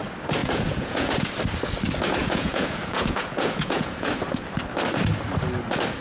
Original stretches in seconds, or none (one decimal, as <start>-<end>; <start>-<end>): 0.0-0.4; 1.3-2.2; 4.1-6.0